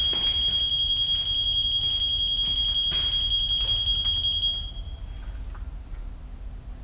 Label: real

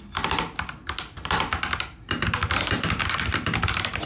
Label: real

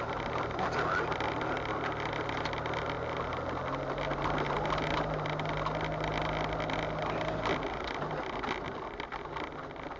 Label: real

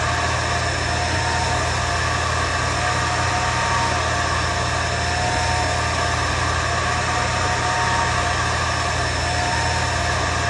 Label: real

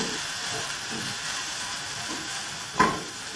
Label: fake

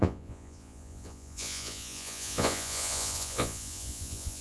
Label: fake